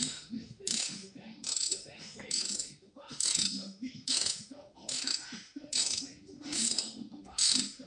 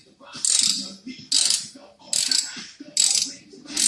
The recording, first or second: second